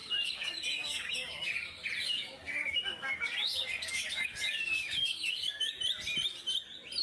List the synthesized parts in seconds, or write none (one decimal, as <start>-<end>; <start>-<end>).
0.0-1.5; 2.0-5.7